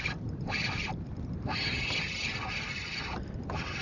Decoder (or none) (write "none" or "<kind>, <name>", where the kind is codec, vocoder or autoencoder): vocoder, BigVGAN v2